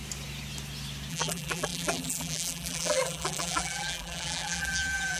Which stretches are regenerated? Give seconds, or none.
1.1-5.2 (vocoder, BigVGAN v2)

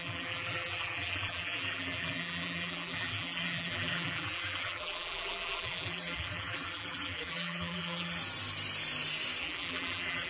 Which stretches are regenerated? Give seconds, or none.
0.0-8.2 (vocoder, BigVGAN v2); 9.4-10.3

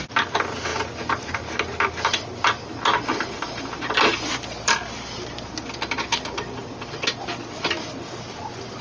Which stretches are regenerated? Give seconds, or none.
none

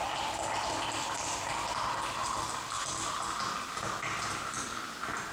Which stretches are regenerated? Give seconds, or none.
none

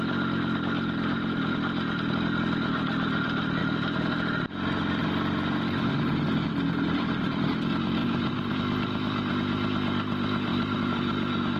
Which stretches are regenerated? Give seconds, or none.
8.0-8.6 (vocoder, BigVGAN v2); 10.5-11.6